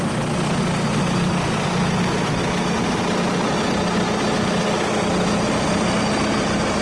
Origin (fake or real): real